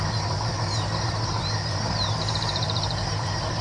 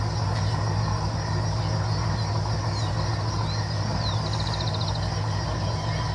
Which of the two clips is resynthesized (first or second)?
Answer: first